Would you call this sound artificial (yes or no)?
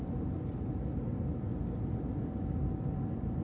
no